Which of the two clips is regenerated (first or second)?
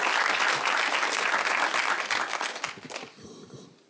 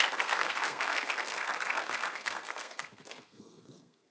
second